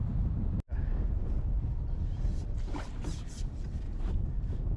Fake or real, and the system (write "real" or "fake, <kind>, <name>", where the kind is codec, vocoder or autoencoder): real